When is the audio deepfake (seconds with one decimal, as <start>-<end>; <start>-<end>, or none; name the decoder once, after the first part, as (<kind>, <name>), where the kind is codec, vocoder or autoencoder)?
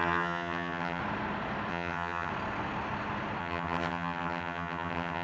0.0-1.0 (vocoder, HiFi-GAN); 1.7-2.3; 3.4-5.2